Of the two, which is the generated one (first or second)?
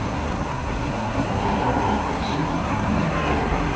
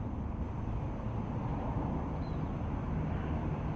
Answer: first